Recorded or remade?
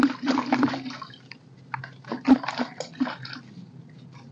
recorded